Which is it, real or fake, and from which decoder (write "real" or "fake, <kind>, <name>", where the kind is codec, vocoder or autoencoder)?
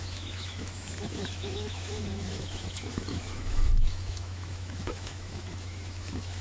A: fake, autoencoder, DAC-VAE